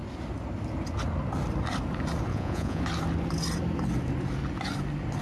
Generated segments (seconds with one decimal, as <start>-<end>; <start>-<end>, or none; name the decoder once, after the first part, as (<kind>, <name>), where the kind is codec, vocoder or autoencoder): 2.3-2.8 (vocoder, Vocos)